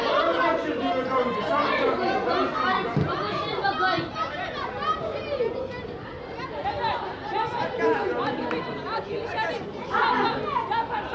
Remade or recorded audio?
recorded